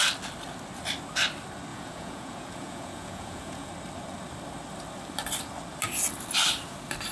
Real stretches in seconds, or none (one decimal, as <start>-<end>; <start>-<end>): 0.0-1.7; 3.7-7.1